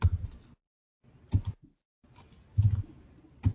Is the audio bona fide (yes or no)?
yes